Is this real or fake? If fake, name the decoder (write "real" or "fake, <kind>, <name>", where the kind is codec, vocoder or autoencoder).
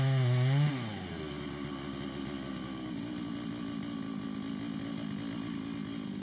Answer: real